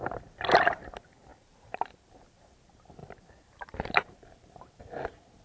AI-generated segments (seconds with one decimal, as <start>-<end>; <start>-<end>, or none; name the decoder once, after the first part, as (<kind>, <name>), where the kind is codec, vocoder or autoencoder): 1.3-2.6 (vocoder, BigVGAN v2); 3.0-4.8